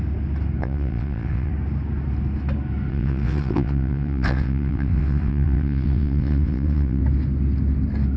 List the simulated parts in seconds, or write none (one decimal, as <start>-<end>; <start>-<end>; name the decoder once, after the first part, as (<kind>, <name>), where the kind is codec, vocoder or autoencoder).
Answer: 0.6-1.5 (vocoder, WaveNeXt); 2.9-7.0